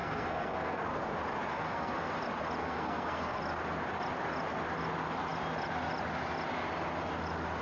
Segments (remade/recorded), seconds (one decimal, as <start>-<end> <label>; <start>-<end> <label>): 0.0-0.8 remade; 0.8-1.5 recorded; 1.5-2.1 remade; 2.1-2.6 recorded; 2.6-3.4 remade; 3.4-7.6 recorded